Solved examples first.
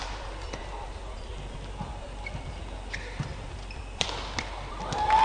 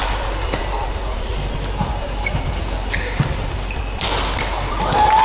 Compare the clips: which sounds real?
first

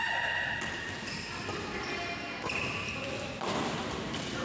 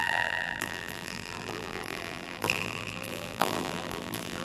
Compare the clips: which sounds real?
first